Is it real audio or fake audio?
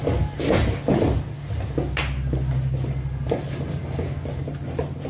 real